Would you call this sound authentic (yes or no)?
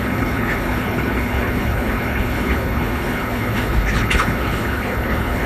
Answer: no